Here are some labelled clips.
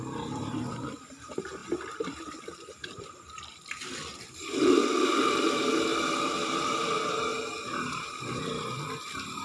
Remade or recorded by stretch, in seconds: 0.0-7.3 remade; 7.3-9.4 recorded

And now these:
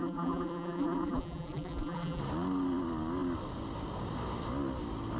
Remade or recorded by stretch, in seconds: 0.0-2.2 remade; 2.2-5.2 recorded

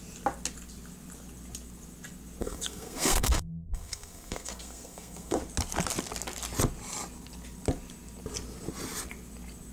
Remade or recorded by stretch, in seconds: 0.0-2.4 recorded; 2.4-5.4 remade; 5.4-9.7 recorded

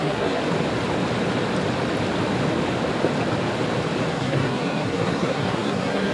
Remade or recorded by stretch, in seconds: 0.0-0.4 remade; 0.4-4.1 recorded; 4.1-6.1 remade

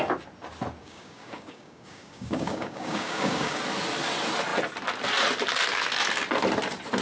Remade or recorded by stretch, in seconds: 0.0-0.8 recorded; 0.8-3.6 remade; 3.6-7.0 recorded